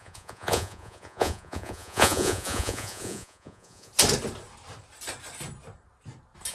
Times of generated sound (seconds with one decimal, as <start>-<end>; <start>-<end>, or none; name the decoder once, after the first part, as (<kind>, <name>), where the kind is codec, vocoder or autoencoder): 0.0-3.9 (vocoder, Vocos)